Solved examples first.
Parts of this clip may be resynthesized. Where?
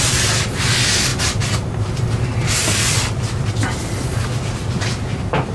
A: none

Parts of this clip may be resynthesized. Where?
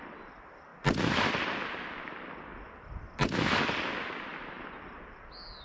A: none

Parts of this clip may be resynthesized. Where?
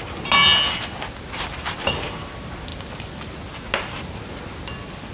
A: none